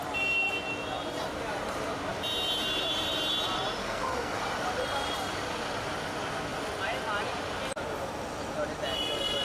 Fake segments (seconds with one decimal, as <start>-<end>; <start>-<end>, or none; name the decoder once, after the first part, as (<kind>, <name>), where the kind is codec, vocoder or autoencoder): 3.8-4.4 (codec, SNAC)